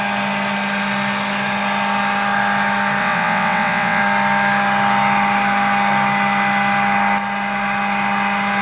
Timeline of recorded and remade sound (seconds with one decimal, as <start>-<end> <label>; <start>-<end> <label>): 0.0-3.0 recorded; 3.0-4.0 remade; 4.0-8.6 recorded